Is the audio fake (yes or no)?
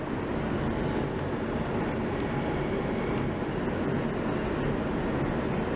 no